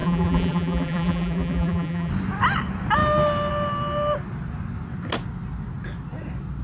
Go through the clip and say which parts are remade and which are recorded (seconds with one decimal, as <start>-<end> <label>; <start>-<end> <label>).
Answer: 0.0-2.1 remade; 2.1-6.6 recorded